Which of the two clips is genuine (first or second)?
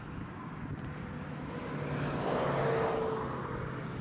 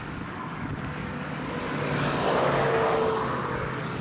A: first